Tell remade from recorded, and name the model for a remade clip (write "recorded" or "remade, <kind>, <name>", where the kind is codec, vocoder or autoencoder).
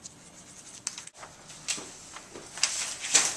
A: recorded